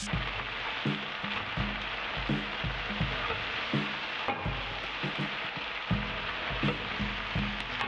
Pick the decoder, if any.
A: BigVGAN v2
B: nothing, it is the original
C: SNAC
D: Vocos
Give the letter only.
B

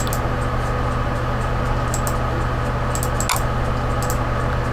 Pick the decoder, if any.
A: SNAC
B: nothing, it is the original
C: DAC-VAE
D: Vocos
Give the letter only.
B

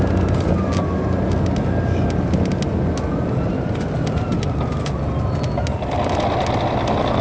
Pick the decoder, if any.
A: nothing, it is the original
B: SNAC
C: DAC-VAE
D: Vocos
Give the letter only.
A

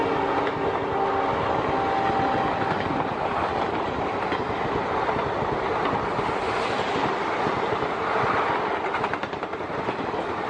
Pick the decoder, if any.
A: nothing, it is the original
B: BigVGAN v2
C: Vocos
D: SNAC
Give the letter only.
A